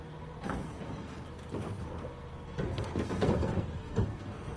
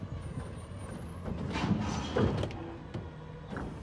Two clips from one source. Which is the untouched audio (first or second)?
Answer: second